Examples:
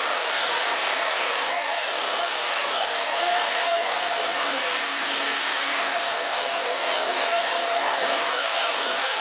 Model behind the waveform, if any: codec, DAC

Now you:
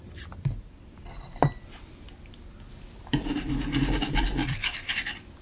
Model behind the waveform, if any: none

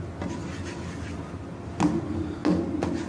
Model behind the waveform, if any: none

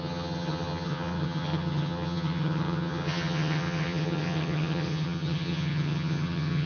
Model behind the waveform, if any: vocoder, HiFi-GAN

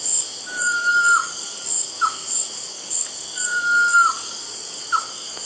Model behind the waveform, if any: codec, DAC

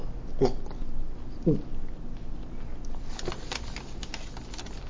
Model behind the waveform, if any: none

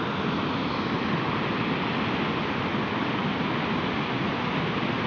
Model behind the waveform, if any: none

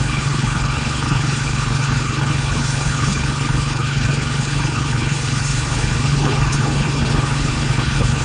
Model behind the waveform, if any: codec, HILCodec